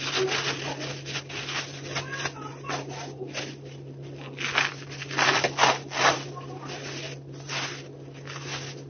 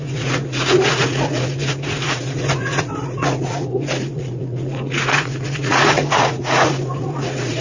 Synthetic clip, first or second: second